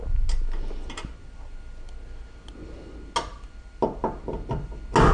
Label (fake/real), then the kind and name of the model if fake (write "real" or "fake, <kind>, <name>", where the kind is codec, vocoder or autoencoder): real